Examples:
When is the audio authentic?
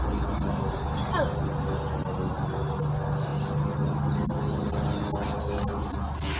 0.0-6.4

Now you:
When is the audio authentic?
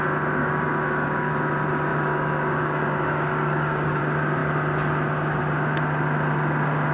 0.0-0.4; 1.3-1.9; 4.0-6.9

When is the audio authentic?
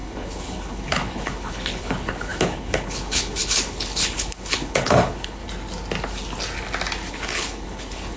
5.4-7.1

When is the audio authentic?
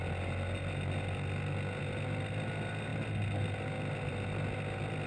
0.0-5.1